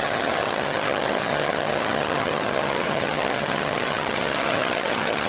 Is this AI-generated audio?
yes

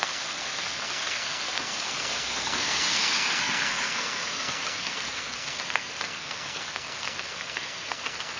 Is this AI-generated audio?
yes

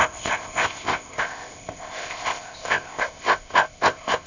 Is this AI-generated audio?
yes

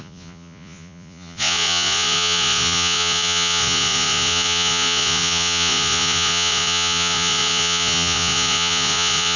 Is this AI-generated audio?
yes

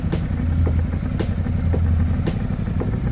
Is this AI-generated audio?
no